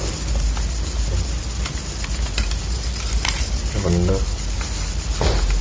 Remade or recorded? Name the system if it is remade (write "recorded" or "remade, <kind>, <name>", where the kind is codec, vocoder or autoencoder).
recorded